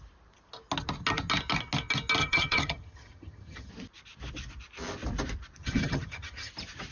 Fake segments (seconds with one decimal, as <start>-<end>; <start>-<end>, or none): 2.2-3.7; 5.6-6.5